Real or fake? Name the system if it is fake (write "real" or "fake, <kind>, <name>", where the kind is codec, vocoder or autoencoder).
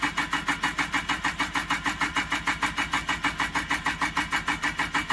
real